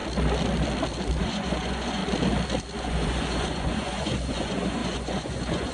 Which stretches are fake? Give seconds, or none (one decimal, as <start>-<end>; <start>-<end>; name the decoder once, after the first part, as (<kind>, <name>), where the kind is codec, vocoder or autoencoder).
1.2-2.0 (vocoder, Vocos); 2.8-5.7